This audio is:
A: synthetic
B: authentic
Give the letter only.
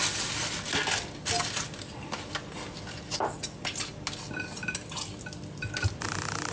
B